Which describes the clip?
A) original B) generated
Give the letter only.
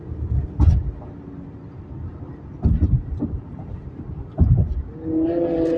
A